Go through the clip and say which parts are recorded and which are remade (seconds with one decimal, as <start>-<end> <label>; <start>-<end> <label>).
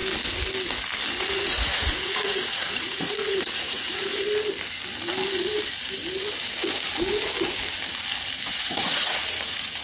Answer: 0.0-1.2 recorded; 1.2-4.1 remade; 4.1-8.5 recorded; 8.5-9.8 remade